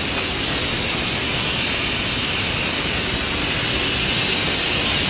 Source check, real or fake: real